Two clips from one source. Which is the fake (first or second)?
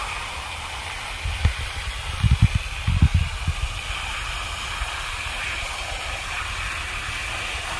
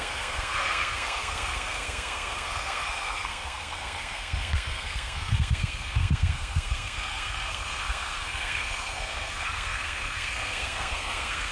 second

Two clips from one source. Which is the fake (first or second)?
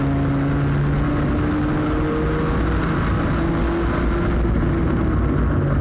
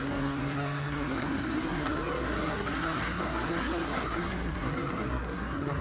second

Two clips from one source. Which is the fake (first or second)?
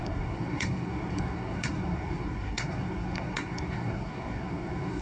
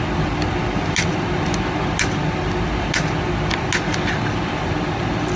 first